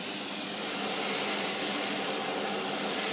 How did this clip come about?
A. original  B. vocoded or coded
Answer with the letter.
A